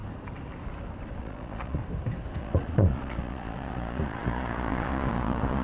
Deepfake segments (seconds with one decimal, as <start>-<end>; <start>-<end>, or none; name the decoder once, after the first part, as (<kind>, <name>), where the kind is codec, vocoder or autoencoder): 1.2-1.8 (vocoder, Vocos); 2.4-5.6